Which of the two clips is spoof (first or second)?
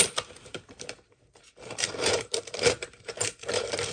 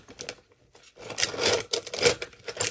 first